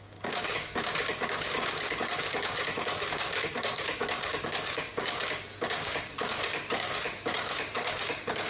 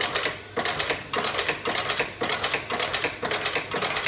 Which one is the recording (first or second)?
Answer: second